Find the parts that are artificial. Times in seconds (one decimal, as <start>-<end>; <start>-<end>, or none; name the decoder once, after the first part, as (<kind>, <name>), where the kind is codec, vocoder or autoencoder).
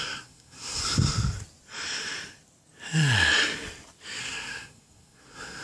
0.0-0.8 (codec, SNAC); 4.2-5.6